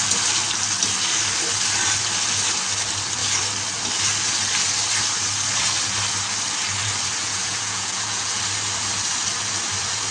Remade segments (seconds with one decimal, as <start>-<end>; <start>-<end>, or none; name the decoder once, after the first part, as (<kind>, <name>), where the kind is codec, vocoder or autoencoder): 7.2-8.4 (vocoder, Vocos)